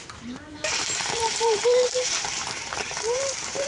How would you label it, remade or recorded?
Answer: remade